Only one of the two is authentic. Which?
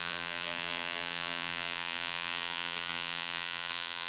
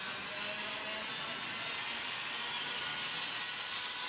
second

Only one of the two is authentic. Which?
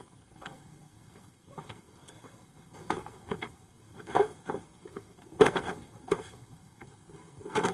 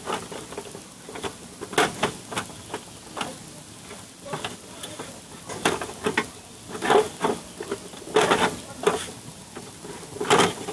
second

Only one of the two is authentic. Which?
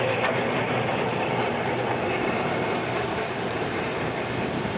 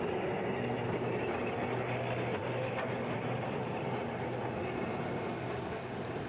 second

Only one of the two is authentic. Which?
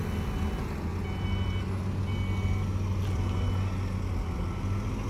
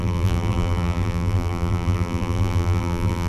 first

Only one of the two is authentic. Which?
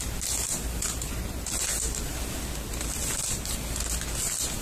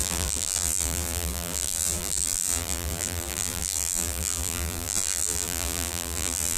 first